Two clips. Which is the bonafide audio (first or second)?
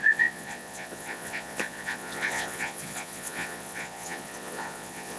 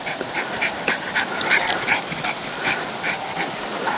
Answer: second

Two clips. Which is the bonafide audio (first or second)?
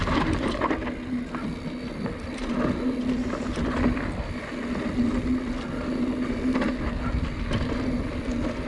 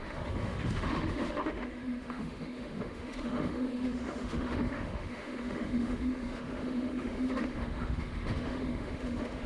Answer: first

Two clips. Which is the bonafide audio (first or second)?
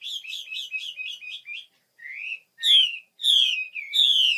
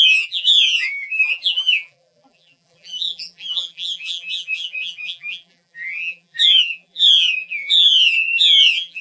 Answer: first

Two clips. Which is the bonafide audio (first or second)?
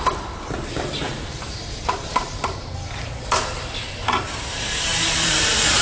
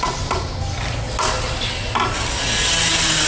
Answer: second